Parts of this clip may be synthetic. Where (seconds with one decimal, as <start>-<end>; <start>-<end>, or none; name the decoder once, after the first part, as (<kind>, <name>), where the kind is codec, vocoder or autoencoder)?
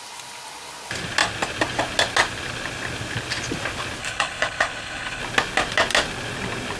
4.0-5.2 (codec, HILCodec)